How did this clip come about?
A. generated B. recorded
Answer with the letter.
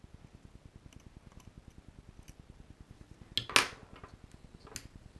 B